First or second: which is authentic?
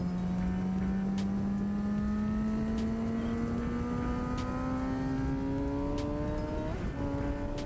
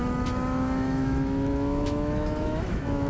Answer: first